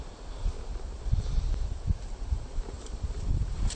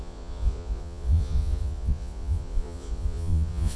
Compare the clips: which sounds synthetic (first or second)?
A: second